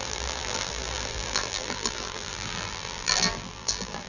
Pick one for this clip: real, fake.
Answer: fake